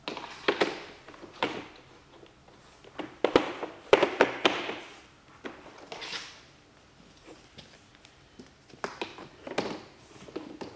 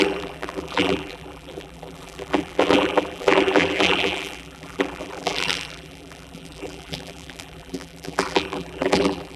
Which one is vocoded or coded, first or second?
second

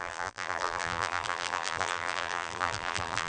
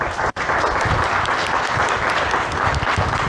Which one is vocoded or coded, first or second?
first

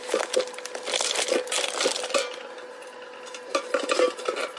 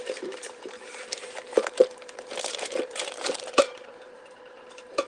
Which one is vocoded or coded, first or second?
second